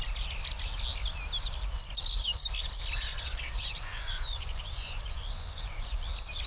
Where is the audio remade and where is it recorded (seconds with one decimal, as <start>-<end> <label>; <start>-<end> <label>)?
0.0-3.1 recorded; 3.1-6.0 remade; 6.0-6.5 recorded